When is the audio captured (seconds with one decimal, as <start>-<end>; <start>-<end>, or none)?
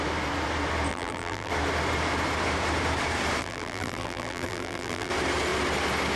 0.0-0.9; 1.5-3.4; 5.1-6.2